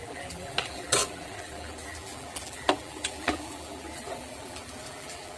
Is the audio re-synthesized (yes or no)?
yes